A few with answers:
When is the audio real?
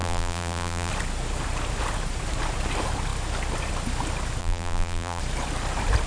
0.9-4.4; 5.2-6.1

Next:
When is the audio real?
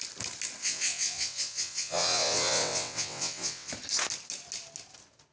0.0-0.6; 3.7-5.3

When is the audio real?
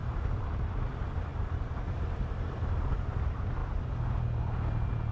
3.6-5.1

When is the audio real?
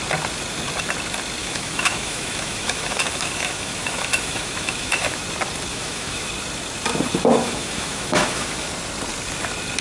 0.0-1.4; 5.2-5.7; 6.3-7.4; 8.7-9.8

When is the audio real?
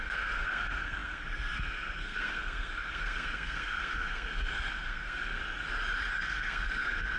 5.4-6.2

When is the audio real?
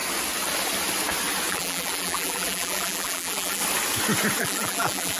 0.0-1.5; 3.6-4.4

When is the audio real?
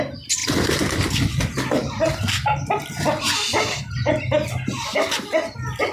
0.0-5.9